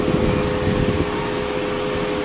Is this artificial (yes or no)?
no